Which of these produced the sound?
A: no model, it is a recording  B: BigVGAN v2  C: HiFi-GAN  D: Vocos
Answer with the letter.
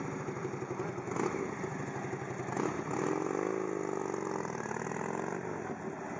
A